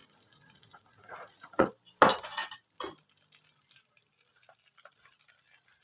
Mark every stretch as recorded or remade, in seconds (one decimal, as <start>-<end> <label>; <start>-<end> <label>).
0.0-1.7 remade; 1.7-5.8 recorded